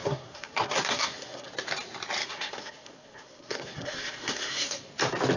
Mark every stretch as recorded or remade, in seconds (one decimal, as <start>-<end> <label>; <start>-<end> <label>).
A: 0.0-1.5 remade; 1.5-2.2 recorded; 2.2-4.9 remade; 4.9-5.4 recorded